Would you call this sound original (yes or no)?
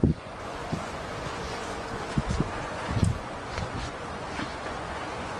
no